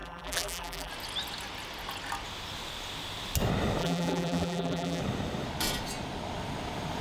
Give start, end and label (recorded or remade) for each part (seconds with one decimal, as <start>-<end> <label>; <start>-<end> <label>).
0.0-0.9 remade; 0.9-3.8 recorded; 3.8-5.0 remade; 5.0-7.0 recorded

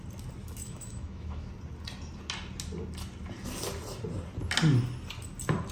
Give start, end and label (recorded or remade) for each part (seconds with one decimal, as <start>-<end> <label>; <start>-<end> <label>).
0.0-0.4 recorded; 0.4-1.5 remade; 1.5-5.7 recorded

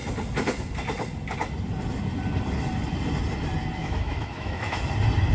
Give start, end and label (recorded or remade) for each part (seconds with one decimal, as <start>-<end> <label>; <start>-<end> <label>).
0.0-3.8 recorded; 3.8-4.8 remade; 4.8-5.3 recorded

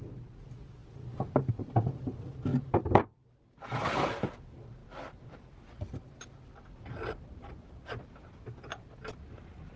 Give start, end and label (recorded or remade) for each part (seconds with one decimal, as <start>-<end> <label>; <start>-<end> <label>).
0.0-9.8 recorded

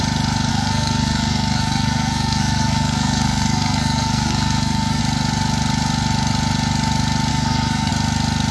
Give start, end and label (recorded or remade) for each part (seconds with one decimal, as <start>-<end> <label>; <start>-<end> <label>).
0.0-0.5 recorded; 0.5-5.0 remade; 5.0-7.3 recorded; 7.3-7.9 remade; 7.9-8.5 recorded

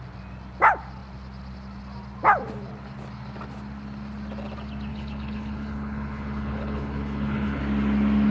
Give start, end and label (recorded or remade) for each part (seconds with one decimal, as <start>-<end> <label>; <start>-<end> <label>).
0.0-4.9 recorded; 4.9-7.6 remade; 7.6-8.3 recorded

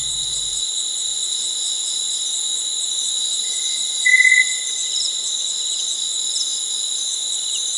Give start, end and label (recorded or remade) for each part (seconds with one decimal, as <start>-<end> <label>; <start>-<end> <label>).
0.0-0.7 remade; 0.7-1.1 recorded; 1.1-5.8 remade; 5.8-7.8 recorded

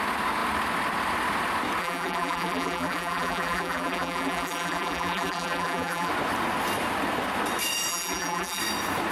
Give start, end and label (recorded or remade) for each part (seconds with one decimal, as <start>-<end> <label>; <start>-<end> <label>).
0.0-1.8 recorded; 1.8-6.1 remade; 6.1-7.9 recorded; 7.9-8.6 remade; 8.6-9.1 recorded